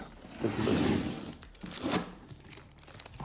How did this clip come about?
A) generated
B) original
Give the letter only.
A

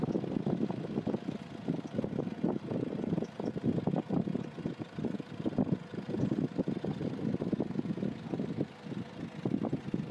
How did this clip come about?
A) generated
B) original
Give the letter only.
B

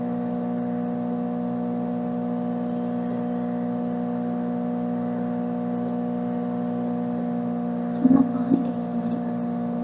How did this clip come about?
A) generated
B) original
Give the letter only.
B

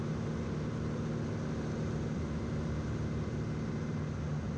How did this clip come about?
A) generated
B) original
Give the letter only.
B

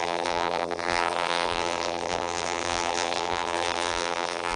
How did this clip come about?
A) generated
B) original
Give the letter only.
A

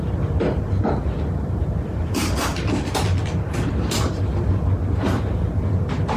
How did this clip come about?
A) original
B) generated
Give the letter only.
B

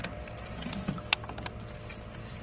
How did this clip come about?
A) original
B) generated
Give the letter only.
A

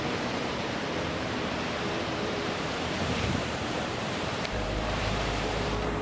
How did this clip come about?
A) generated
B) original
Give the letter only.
A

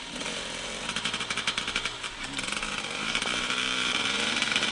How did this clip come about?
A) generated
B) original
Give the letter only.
A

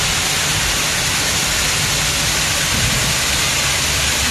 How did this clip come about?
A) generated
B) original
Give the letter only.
B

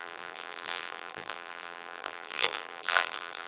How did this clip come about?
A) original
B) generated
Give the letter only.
B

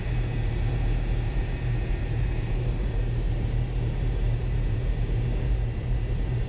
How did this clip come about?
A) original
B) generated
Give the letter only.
B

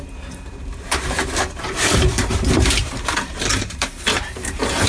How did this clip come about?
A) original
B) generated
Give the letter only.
B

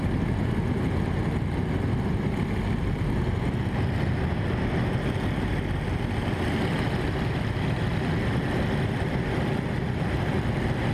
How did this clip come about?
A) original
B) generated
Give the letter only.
A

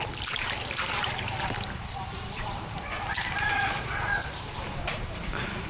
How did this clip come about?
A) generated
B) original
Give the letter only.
A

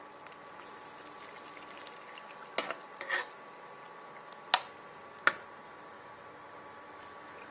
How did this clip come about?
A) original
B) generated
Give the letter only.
A